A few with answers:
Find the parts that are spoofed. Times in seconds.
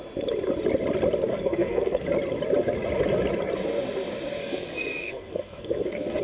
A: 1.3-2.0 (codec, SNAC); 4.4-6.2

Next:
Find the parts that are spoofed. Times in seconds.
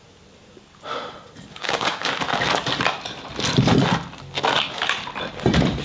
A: 1.5-2.1 (codec, DAC)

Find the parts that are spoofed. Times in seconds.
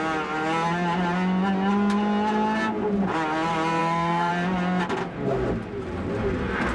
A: 3.8-4.3 (codec, SNAC)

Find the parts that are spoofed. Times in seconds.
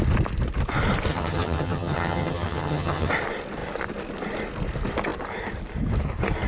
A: 1.1-3.1 (vocoder, HiFi-GAN)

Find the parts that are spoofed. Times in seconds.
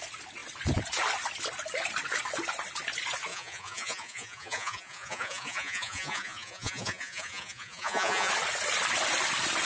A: 3.3-8.3 (vocoder, Vocos)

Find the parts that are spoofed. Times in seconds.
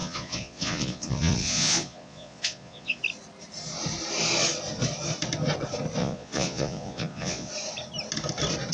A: 0.0-3.0 (vocoder, Vocos); 6.0-7.5